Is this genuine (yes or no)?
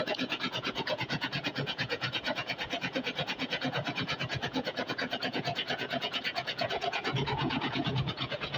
no